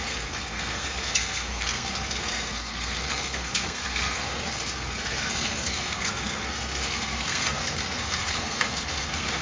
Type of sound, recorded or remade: remade